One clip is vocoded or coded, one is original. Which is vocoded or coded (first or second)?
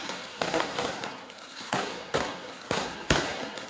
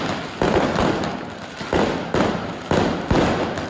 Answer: first